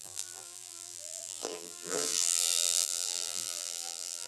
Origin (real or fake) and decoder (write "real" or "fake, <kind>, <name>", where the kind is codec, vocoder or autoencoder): fake, vocoder, BigVGAN v2